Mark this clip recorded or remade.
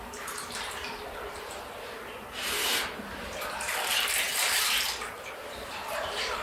remade